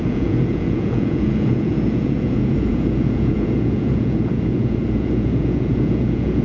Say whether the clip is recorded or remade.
remade